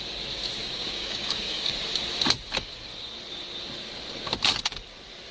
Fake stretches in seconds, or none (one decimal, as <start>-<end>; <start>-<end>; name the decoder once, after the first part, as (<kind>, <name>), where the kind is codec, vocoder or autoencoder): 0.6-1.7 (codec, DAC)

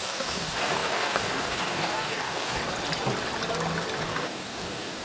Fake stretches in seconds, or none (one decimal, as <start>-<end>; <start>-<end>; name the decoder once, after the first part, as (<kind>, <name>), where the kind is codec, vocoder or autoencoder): 0.0-2.6 (codec, DAC); 4.0-5.0

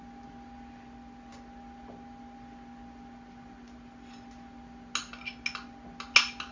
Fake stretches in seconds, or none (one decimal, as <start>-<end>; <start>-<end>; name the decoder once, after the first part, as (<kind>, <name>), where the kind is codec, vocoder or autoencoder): none

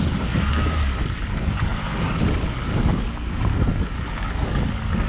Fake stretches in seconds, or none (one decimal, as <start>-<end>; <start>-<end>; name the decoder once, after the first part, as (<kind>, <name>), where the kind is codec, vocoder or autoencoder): 0.0-5.1 (codec, DAC)